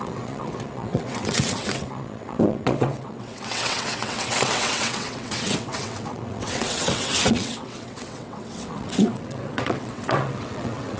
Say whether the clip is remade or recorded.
remade